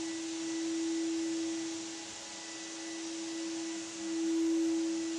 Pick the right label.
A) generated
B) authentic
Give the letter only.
B